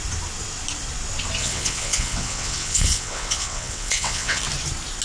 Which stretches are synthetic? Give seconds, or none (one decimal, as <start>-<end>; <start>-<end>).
1.4-4.4